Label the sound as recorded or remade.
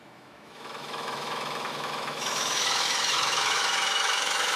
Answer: remade